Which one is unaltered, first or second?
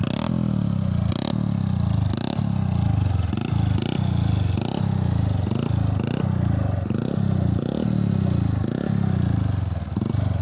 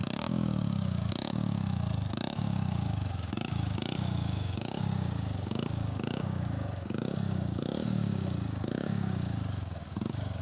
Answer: first